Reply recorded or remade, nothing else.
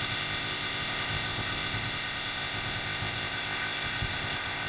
remade